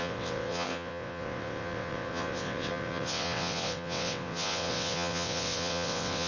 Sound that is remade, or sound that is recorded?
remade